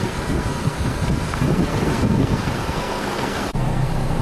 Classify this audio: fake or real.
fake